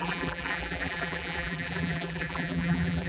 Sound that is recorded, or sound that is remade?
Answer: remade